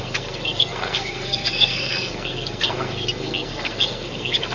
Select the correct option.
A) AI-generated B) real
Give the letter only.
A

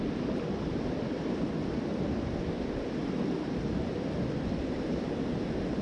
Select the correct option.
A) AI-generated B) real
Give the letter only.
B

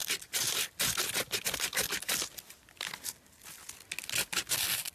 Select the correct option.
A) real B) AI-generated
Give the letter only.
A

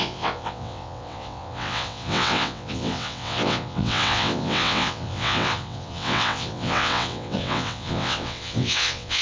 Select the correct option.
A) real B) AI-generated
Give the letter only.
B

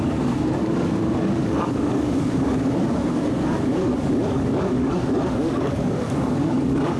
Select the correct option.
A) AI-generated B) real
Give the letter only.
A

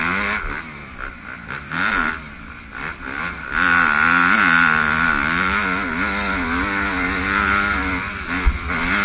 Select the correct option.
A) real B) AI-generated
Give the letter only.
A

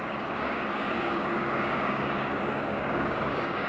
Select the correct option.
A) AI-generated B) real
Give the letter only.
A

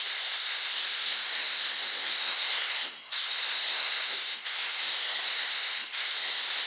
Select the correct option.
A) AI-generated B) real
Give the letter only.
A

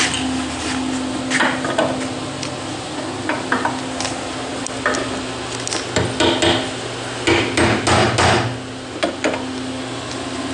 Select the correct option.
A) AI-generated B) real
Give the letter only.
B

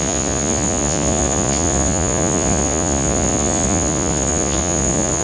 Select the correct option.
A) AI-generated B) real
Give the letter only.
A